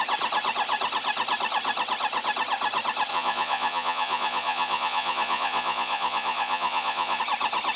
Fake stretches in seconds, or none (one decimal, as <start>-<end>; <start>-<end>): 3.1-7.2